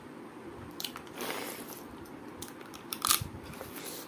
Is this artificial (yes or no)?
yes